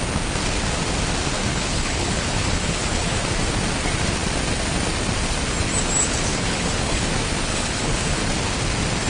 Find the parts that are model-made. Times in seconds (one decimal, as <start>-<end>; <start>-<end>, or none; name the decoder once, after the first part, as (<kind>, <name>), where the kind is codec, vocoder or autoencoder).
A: 1.5-3.2 (codec, HILCodec); 6.0-7.1; 7.5-8.2